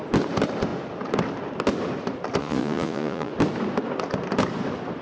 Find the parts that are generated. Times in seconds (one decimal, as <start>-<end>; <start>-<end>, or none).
2.4-3.3